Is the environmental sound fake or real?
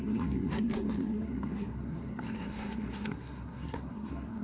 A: fake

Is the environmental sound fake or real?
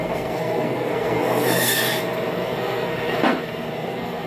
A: fake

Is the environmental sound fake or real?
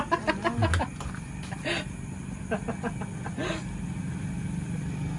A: real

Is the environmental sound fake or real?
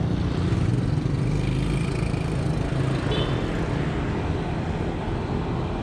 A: real